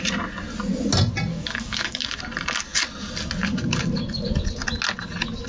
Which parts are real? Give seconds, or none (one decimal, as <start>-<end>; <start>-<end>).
0.0-1.3; 2.2-5.5